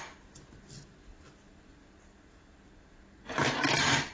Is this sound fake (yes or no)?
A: no